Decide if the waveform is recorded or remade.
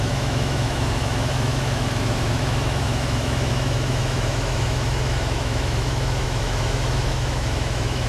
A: remade